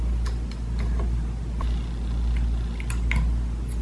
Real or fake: real